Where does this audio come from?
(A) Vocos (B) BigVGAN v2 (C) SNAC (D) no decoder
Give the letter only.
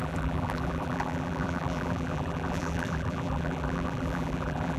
B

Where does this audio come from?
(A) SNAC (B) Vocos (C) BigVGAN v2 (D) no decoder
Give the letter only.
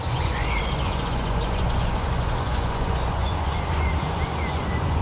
B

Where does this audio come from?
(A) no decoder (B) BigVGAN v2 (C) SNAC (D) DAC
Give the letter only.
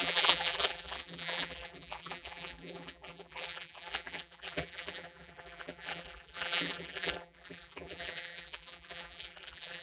B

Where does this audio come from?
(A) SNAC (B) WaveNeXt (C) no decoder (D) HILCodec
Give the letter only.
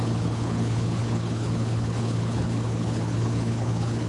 D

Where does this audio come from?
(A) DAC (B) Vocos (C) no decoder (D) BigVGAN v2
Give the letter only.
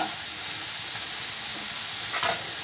C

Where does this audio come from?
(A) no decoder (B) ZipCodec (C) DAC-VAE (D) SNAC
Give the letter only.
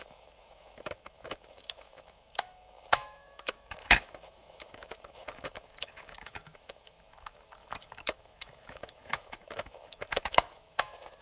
C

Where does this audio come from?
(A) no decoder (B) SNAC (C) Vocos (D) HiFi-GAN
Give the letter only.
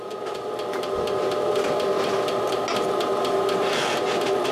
A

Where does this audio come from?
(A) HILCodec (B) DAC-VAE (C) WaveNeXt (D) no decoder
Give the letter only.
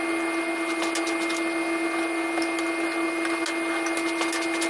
D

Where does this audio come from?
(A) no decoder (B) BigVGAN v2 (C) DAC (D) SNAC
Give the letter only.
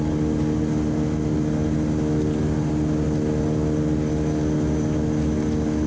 A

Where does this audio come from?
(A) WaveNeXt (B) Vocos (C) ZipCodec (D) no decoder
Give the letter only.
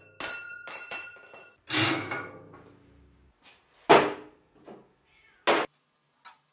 D